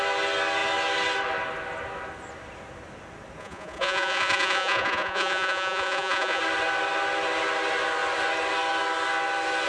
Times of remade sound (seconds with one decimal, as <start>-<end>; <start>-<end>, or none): 3.4-6.4